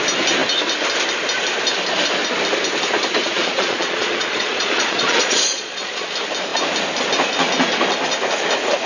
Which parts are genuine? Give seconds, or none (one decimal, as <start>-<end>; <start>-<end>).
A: 0.0-3.2; 6.1-8.9